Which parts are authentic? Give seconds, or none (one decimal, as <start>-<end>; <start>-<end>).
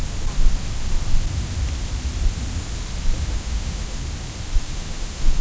0.0-3.2; 4.0-4.6